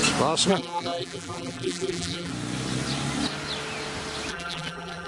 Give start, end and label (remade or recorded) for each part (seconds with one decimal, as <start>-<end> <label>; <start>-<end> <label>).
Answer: 0.0-0.5 recorded; 0.5-2.3 remade; 2.3-4.3 recorded; 4.3-5.1 remade